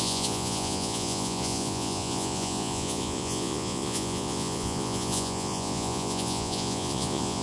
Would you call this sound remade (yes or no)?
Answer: yes